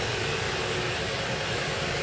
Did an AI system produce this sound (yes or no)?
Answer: yes